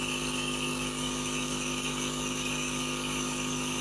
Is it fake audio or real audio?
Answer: fake